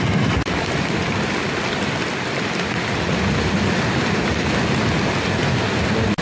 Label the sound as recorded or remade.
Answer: recorded